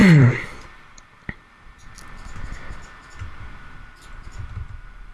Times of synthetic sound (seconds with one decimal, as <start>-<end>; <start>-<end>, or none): 0.0-1.5